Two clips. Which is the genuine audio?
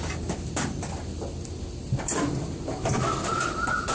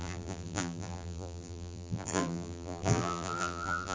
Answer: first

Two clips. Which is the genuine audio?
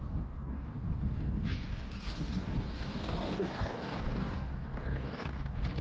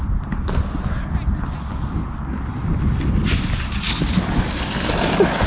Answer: second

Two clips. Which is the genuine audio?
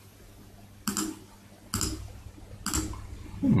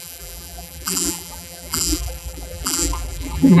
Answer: first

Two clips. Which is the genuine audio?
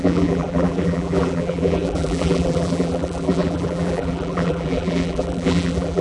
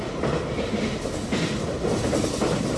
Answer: second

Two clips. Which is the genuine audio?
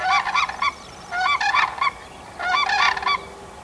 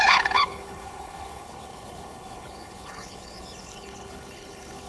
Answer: first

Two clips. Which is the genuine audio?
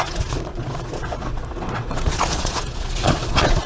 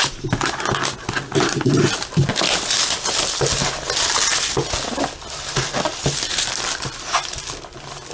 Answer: second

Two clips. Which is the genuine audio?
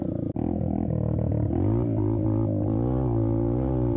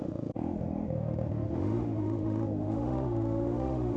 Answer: first